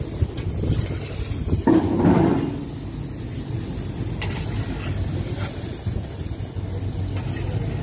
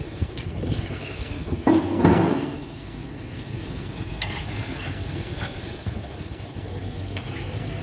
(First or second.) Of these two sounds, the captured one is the first